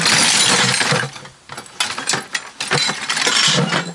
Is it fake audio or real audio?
real